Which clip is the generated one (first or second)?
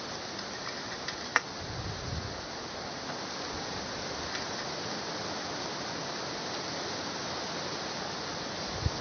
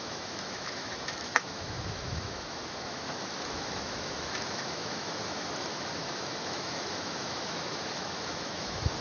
second